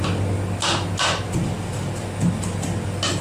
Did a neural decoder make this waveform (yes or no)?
no